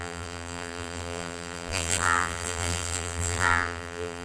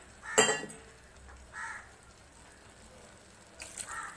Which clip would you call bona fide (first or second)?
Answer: second